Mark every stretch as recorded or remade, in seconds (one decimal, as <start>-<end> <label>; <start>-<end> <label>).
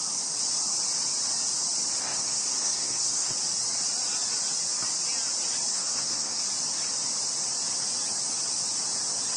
0.0-2.0 recorded; 2.0-3.3 remade; 3.3-5.7 recorded; 5.7-6.4 remade; 6.4-9.4 recorded